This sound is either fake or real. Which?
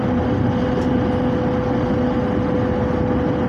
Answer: real